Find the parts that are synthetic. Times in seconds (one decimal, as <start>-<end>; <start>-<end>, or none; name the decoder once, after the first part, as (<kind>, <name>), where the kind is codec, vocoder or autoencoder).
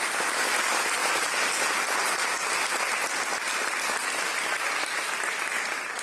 none